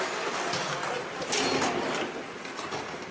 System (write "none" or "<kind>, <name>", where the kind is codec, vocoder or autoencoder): none